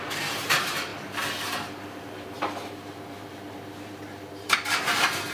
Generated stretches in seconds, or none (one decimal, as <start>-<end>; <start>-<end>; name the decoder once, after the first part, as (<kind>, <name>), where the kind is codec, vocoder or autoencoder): 0.0-5.3 (vocoder, BigVGAN v2)